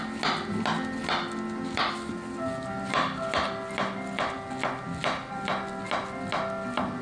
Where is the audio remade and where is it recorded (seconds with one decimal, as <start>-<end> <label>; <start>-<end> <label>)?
0.0-7.0 recorded